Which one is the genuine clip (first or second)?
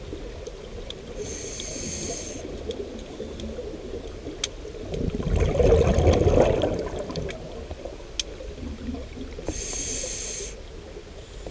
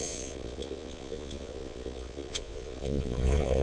first